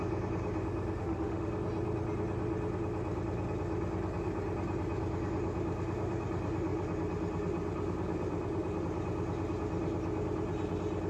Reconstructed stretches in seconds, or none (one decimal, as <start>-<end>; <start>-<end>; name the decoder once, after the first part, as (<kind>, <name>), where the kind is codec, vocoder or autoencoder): 1.0-1.5 (autoencoder, DAC-VAE)